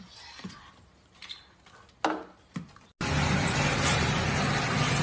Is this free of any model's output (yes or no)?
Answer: yes